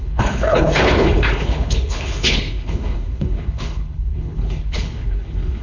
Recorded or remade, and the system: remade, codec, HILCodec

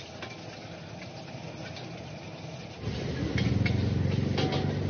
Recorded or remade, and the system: recorded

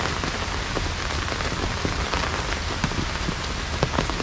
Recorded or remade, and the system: recorded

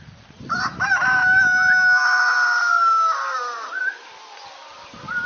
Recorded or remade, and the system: recorded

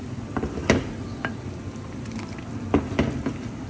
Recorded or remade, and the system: recorded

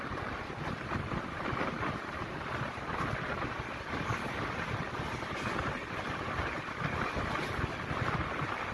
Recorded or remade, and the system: recorded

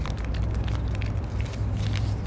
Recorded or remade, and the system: recorded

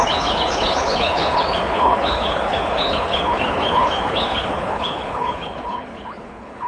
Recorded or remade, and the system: remade, codec, HILCodec